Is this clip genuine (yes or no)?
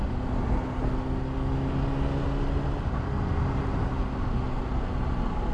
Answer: yes